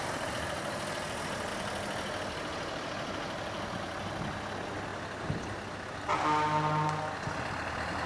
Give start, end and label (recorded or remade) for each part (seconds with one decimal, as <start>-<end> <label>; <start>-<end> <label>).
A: 0.0-4.9 recorded; 4.9-5.7 remade; 5.7-8.1 recorded